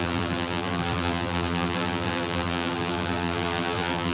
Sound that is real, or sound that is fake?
fake